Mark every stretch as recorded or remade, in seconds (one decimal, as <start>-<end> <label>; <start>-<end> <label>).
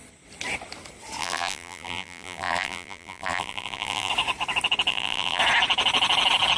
0.0-1.2 recorded; 1.2-4.1 remade; 4.1-4.9 recorded; 4.9-5.4 remade; 5.4-6.6 recorded